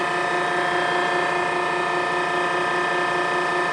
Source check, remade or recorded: recorded